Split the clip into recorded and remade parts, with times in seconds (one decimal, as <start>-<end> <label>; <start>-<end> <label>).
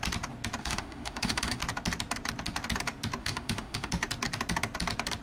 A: 0.0-0.6 recorded; 0.6-1.6 remade; 1.6-3.2 recorded; 3.2-3.9 remade; 3.9-5.2 recorded